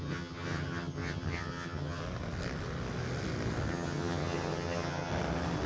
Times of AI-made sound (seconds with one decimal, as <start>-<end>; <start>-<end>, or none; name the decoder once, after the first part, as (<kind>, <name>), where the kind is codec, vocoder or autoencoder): 0.0-2.0 (vocoder, HiFi-GAN); 3.7-5.1